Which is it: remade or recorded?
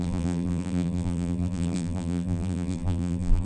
remade